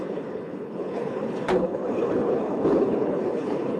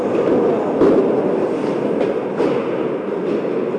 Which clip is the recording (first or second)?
second